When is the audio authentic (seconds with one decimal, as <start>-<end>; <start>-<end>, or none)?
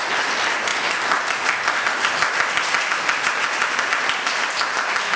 0.0-5.2